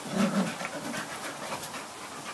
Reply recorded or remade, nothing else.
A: recorded